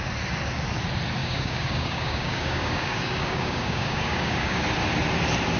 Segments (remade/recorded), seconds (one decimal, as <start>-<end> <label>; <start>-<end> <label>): 0.0-1.2 recorded; 1.2-4.6 remade; 4.6-5.6 recorded